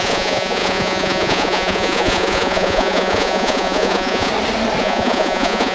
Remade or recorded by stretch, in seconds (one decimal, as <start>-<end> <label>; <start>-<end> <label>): 0.0-4.3 remade; 4.3-4.8 recorded; 4.8-5.7 remade